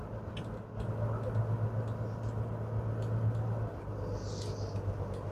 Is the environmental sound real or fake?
real